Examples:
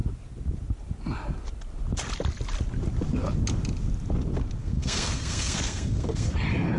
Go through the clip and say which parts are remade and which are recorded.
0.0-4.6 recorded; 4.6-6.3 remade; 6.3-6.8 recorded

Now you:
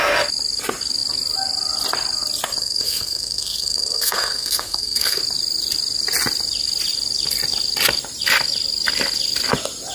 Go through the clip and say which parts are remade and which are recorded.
0.0-2.6 recorded; 2.6-5.2 remade; 5.2-9.9 recorded

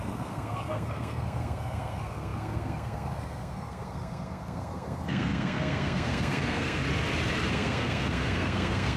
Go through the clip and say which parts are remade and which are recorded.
0.0-6.8 remade; 6.8-7.5 recorded; 7.5-9.0 remade

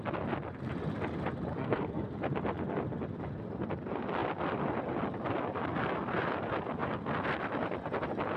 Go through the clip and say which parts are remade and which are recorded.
0.0-1.5 recorded; 1.5-2.1 remade; 2.1-8.4 recorded